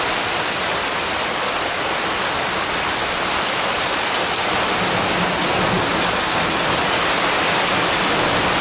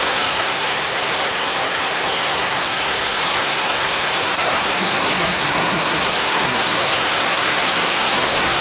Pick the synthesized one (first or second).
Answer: second